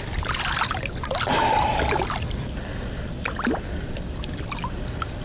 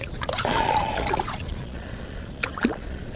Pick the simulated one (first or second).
second